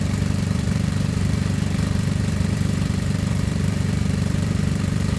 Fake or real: fake